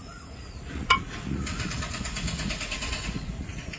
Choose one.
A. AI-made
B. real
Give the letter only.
A